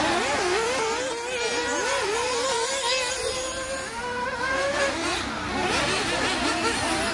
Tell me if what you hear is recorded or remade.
recorded